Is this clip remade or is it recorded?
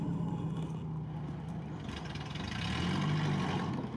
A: recorded